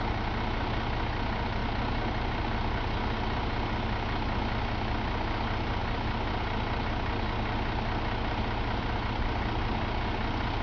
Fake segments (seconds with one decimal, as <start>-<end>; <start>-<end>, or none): none

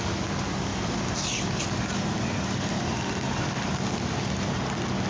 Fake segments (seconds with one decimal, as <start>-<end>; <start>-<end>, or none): none

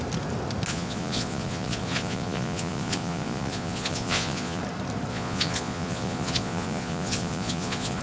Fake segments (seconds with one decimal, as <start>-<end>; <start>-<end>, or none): 0.7-4.6; 5.1-8.0

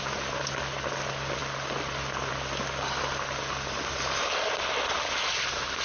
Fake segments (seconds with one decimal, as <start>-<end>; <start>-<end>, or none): none